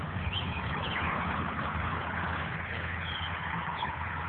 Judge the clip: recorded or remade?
remade